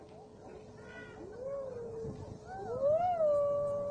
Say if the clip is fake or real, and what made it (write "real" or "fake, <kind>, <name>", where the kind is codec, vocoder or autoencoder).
real